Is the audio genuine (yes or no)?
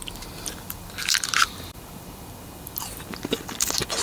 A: no